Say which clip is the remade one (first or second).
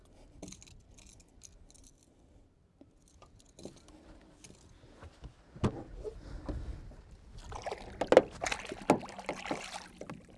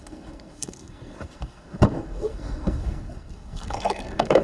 second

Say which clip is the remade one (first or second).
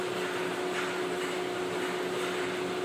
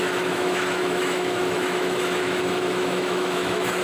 second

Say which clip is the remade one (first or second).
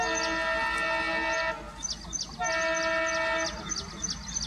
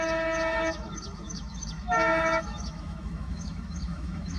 second